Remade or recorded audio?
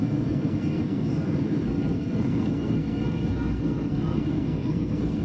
remade